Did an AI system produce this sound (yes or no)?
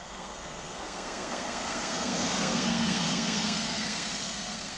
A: yes